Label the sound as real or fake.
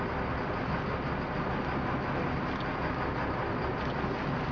real